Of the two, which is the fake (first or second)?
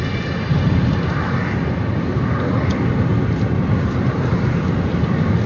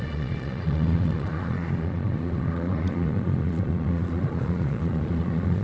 second